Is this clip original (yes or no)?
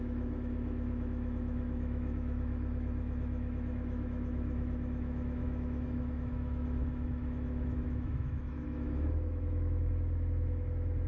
no